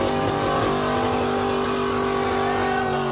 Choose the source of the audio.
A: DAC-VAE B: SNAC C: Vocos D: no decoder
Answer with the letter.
D